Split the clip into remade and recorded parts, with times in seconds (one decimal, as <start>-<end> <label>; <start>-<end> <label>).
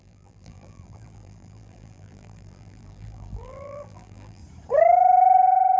0.0-4.4 remade; 4.4-5.8 recorded